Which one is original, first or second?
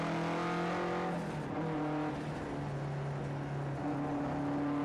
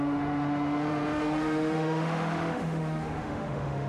first